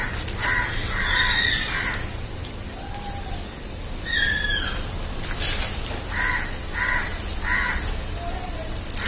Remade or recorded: recorded